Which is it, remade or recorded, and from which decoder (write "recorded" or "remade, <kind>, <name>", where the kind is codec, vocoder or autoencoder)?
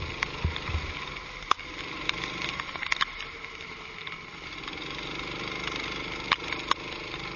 recorded